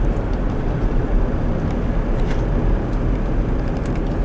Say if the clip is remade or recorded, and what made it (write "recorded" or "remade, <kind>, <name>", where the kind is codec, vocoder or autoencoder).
recorded